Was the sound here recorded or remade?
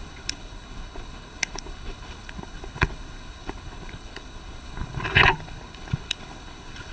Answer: remade